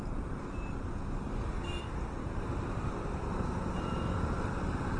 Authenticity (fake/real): real